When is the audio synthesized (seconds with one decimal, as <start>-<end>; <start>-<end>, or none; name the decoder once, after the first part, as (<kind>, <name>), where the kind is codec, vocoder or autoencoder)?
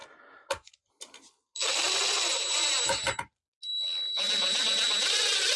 none